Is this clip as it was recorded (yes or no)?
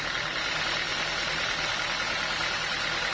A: yes